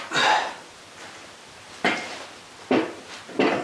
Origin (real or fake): real